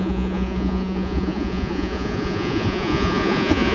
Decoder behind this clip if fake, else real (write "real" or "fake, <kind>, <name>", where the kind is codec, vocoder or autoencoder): fake, vocoder, Vocos